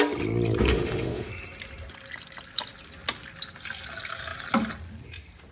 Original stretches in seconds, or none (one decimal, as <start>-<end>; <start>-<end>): 0.0-0.7; 1.3-5.5